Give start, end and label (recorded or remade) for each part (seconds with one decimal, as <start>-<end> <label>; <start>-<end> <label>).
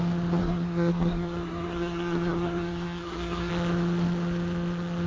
0.0-0.4 recorded; 0.4-3.5 remade; 3.5-5.1 recorded